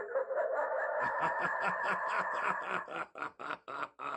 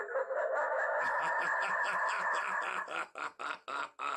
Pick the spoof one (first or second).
first